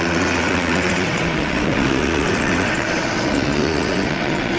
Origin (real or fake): fake